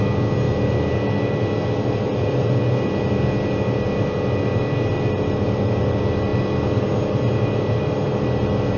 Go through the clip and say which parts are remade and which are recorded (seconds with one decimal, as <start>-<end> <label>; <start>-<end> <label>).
0.0-8.8 recorded